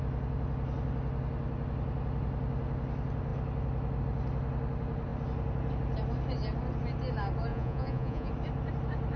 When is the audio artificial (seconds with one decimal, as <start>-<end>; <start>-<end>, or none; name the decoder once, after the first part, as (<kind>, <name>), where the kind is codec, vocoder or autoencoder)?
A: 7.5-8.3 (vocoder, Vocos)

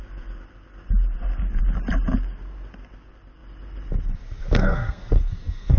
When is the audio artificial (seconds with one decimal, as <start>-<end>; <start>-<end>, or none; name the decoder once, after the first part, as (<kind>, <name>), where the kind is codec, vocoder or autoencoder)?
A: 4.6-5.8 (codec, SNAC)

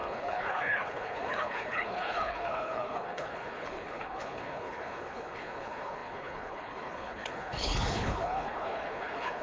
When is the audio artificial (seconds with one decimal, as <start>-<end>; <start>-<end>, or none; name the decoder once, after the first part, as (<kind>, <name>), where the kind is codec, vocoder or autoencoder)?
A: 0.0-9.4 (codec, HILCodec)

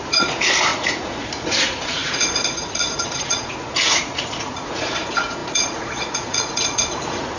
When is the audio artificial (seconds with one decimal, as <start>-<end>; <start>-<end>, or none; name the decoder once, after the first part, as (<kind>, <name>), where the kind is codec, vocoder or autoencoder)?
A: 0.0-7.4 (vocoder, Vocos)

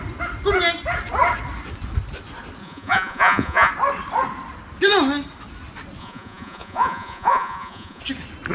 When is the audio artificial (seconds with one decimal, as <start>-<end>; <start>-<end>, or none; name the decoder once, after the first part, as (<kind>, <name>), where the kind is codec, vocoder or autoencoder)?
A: 2.6-3.7 (vocoder, Vocos); 6.0-8.0

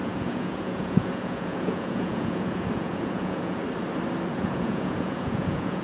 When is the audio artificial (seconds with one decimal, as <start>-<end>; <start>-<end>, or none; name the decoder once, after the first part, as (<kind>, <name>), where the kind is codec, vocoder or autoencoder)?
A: 0.0-3.6 (vocoder, Vocos); 4.3-5.8